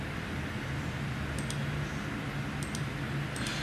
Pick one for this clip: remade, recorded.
recorded